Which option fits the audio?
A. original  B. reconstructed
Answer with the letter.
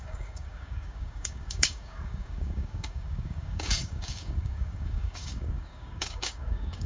B